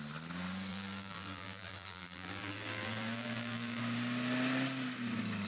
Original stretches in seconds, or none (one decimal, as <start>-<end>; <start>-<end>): 0.0-0.7; 3.8-5.5

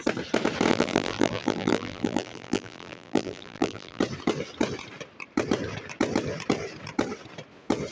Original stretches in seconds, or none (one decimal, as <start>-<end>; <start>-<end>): 0.0-0.7; 4.0-7.9

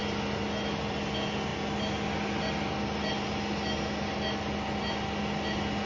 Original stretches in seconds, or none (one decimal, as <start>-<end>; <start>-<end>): 0.0-5.9

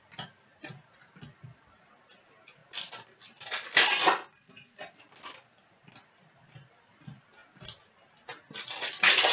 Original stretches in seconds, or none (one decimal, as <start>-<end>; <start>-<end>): none

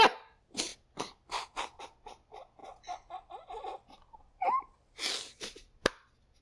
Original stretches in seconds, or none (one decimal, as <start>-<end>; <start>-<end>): 0.0-6.4